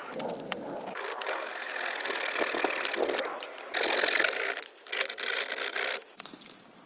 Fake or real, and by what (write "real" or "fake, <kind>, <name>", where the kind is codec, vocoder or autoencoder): real